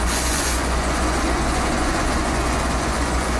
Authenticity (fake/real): fake